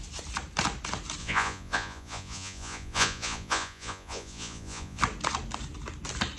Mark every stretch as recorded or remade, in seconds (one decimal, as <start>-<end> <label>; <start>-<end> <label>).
0.0-1.2 recorded; 1.2-5.0 remade; 5.0-6.4 recorded